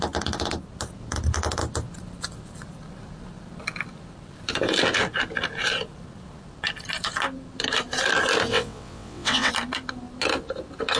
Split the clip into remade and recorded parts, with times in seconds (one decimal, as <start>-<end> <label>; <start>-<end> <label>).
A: 0.0-8.5 recorded; 8.5-9.5 remade; 9.5-11.0 recorded